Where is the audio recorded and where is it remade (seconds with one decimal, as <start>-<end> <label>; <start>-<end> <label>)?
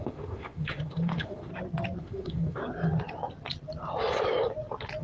0.0-1.5 remade; 1.5-2.0 recorded; 2.0-2.6 remade; 2.6-5.0 recorded